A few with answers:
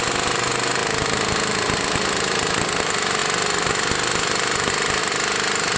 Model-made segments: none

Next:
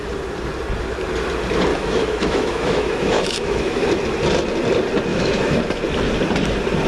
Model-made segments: 1.7-3.9 (autoencoder, DAC-VAE); 5.1-5.6

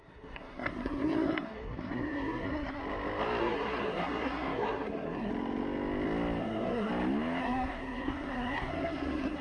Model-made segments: 0.0-2.8 (codec, SNAC); 3.4-5.3; 6.4-6.9; 7.4-9.4

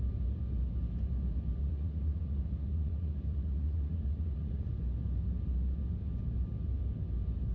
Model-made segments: 1.6-4.7 (vocoder, Vocos)

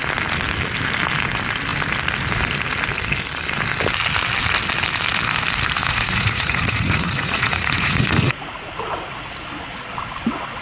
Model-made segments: 5.8-9.3 (vocoder, Vocos)

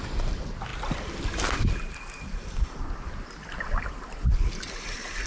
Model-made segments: none

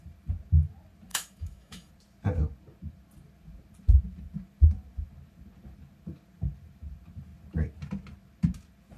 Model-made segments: 1.1-1.9 (autoencoder, DAC-VAE)

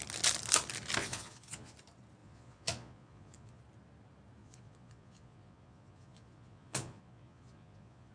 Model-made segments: 1.0-1.7 (vocoder, Vocos); 2.2-3.6; 4.4-8.1